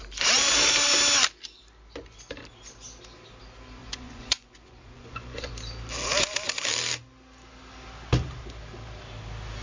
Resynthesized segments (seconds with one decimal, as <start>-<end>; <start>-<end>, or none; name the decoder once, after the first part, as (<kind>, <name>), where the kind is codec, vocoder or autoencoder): 3.8-5.5 (vocoder, Vocos)